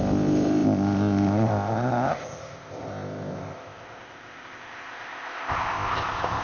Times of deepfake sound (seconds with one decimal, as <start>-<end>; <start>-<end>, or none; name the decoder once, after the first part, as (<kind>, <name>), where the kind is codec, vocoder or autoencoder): 0.0-6.4 (codec, ZipCodec)